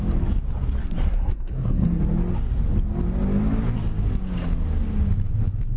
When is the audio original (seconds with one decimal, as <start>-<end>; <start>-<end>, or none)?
0.0-0.8; 2.0-5.8